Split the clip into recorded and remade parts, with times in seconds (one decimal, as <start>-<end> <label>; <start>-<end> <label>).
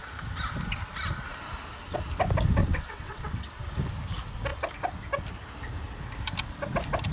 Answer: 0.0-2.6 recorded; 2.6-3.6 remade; 3.6-7.1 recorded